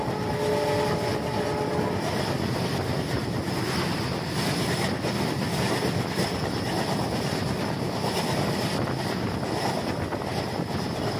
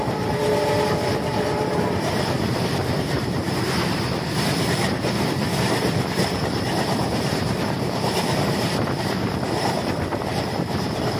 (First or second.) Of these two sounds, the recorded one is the first